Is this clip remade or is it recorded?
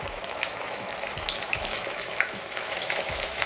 remade